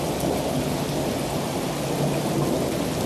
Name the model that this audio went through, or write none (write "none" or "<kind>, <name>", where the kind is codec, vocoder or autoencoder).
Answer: none